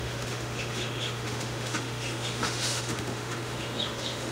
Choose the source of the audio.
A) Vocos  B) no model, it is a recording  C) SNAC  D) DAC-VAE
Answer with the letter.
D